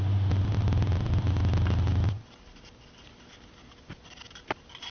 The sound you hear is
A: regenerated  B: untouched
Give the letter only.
B